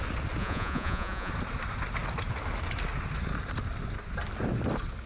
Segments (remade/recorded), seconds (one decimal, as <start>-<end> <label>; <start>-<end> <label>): 0.0-0.4 recorded; 0.4-1.3 remade; 1.3-5.1 recorded